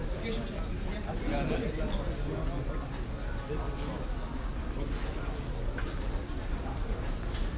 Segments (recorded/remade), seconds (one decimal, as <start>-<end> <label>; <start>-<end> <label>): 0.0-7.6 recorded